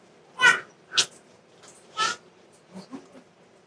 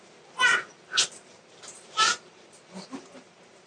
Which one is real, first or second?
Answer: first